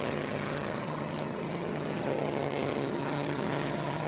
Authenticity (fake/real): fake